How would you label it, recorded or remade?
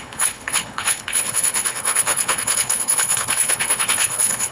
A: remade